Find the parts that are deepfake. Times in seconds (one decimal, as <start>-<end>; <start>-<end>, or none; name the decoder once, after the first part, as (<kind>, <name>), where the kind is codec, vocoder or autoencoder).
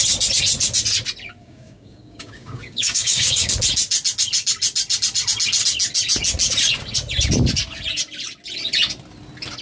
1.4-3.5 (codec, DAC)